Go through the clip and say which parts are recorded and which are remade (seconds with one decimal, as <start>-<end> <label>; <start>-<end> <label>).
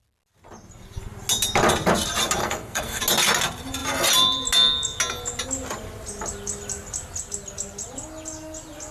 0.0-2.4 recorded; 2.4-3.0 remade; 3.0-8.9 recorded